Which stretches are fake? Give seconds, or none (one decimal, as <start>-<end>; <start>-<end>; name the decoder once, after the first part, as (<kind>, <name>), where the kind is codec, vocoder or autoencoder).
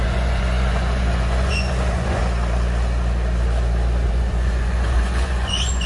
0.0-2.2 (vocoder, Vocos); 4.1-5.9